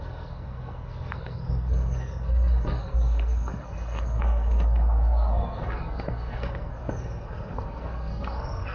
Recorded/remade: remade